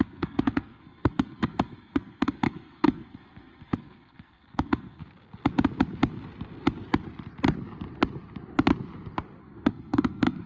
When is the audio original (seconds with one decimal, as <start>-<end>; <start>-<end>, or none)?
5.0-9.4